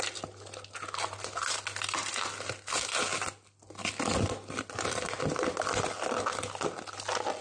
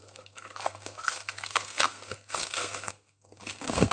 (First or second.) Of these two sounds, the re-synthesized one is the second